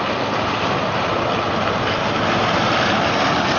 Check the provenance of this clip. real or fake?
real